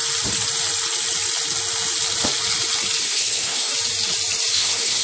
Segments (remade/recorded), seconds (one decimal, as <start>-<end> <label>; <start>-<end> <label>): 0.0-3.0 recorded; 3.0-3.7 remade; 3.7-4.5 recorded; 4.5-5.0 remade